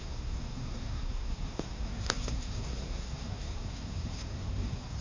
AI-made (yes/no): yes